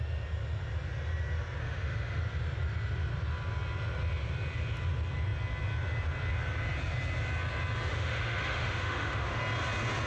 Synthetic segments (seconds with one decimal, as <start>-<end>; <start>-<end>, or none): 1.6-2.2; 7.9-9.4